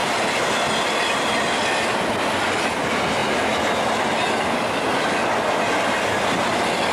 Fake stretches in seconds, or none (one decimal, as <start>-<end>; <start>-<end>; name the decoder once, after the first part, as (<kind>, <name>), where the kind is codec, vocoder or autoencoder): none

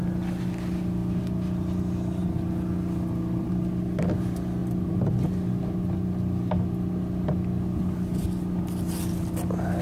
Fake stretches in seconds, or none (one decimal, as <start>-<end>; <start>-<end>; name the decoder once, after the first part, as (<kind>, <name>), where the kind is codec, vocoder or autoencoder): 1.0-1.8 (vocoder, BigVGAN v2); 4.6-9.8